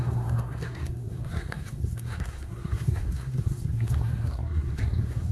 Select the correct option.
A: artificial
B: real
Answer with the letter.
A